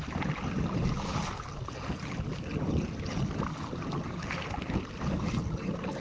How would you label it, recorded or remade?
recorded